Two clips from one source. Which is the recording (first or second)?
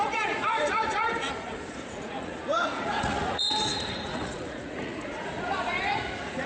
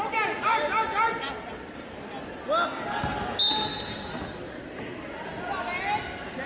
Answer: second